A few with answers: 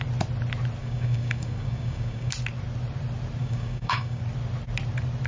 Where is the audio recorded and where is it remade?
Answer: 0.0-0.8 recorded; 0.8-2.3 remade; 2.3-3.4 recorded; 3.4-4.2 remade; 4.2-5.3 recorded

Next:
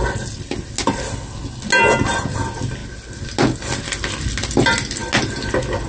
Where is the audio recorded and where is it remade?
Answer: 0.0-5.9 recorded

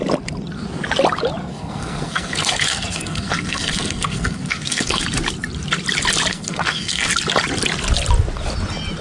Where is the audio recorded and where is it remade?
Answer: 0.0-1.4 recorded; 1.4-5.0 remade; 5.0-6.3 recorded; 6.3-7.1 remade; 7.1-9.0 recorded

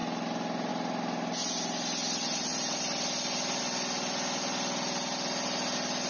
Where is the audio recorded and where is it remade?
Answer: 0.0-6.1 recorded

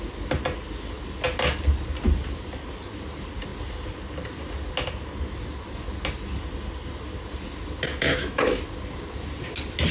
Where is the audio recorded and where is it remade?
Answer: 0.0-7.9 recorded; 7.9-8.6 remade; 8.6-9.9 recorded